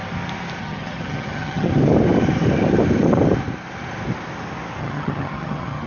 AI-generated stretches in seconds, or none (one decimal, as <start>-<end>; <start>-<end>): 0.6-1.7; 4.8-5.9